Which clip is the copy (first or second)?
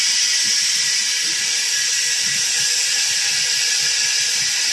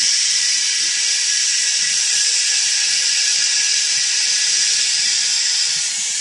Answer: second